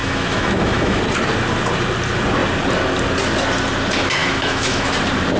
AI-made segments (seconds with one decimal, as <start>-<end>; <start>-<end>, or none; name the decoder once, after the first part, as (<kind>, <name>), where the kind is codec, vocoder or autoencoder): 0.0-1.0 (autoencoder, DAC-VAE); 4.2-4.9